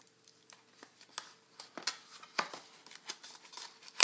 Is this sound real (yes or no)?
yes